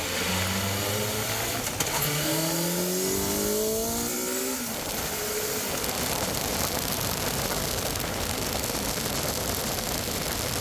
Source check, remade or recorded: recorded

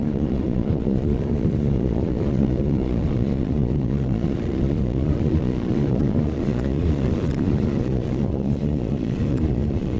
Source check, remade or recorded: remade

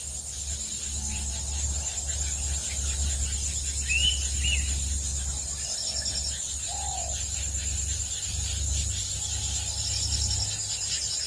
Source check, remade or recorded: recorded